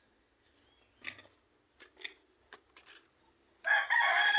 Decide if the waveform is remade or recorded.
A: recorded